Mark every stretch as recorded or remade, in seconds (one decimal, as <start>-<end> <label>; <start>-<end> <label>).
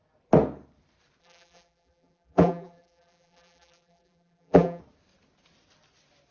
0.0-1.2 recorded; 1.2-4.8 remade; 4.8-6.3 recorded